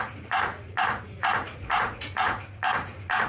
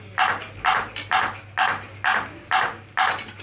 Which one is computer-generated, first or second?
first